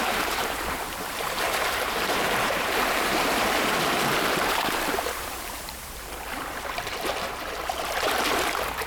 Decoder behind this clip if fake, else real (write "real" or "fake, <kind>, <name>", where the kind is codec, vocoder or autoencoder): fake, vocoder, BigVGAN v2